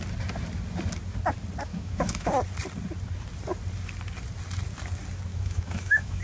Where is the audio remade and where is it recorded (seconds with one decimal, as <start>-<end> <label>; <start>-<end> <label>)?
0.0-1.7 recorded; 1.7-2.3 remade; 2.3-5.3 recorded; 5.3-6.2 remade